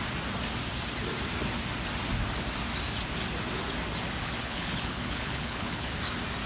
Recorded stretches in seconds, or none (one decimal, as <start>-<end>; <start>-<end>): 0.0-4.2; 5.9-6.5